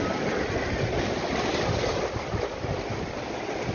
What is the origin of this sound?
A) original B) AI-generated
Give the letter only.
A